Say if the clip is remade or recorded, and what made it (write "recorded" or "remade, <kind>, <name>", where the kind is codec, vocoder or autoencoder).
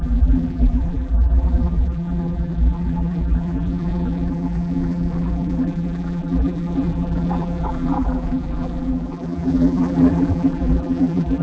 remade, vocoder, BigVGAN v2